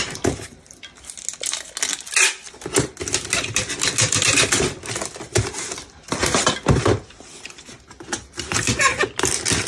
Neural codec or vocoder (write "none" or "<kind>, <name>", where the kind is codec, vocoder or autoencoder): none